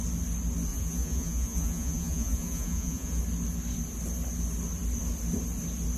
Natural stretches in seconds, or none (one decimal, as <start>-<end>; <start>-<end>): 0.0-0.7; 3.2-6.0